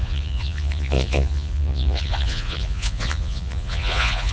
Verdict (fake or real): fake